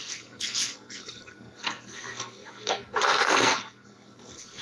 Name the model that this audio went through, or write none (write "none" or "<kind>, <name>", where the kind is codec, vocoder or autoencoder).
codec, SNAC